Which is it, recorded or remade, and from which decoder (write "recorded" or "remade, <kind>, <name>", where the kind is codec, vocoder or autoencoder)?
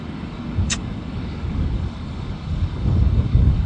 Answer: remade, codec, DAC